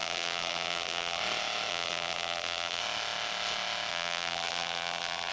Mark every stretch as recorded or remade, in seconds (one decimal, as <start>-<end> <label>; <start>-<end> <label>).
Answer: 0.0-1.2 remade; 1.2-1.7 recorded; 1.7-2.8 remade; 2.8-3.9 recorded; 3.9-5.3 remade